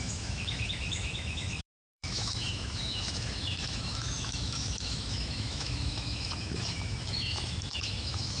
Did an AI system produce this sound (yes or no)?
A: yes